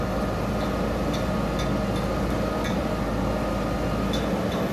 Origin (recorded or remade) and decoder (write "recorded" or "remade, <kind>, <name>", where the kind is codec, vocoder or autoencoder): recorded